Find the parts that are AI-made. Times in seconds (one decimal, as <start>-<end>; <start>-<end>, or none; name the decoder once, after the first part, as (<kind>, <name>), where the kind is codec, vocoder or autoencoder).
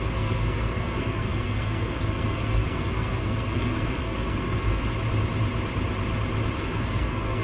0.0-4.9 (codec, SNAC); 6.6-7.4